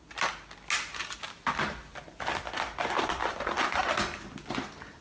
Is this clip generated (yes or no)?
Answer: no